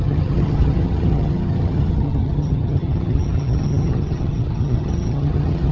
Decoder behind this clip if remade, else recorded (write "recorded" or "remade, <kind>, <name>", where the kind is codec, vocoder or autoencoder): remade, vocoder, HiFi-GAN